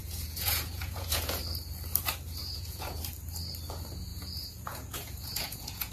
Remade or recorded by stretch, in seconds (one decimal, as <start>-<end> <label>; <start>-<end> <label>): 0.0-1.4 remade; 1.4-2.4 recorded; 2.4-3.0 remade; 3.0-4.1 recorded; 4.1-5.9 remade